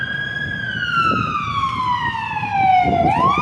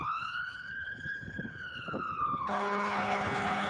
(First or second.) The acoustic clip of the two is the first